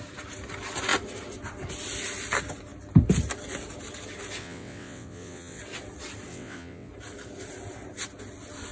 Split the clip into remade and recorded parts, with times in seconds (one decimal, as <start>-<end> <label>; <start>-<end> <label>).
0.0-4.4 recorded; 4.4-5.6 remade; 5.6-6.3 recorded; 6.3-6.9 remade; 6.9-8.7 recorded